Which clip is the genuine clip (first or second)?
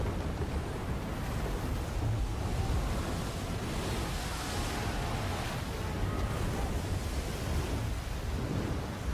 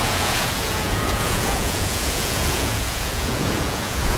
first